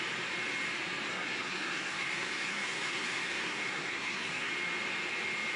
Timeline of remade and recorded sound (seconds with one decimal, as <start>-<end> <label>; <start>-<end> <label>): 0.0-1.1 recorded; 1.1-4.5 remade; 4.5-5.6 recorded